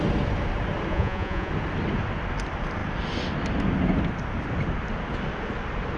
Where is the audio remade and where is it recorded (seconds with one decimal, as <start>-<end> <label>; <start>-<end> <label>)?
0.0-0.9 recorded; 0.9-1.5 remade; 1.5-6.0 recorded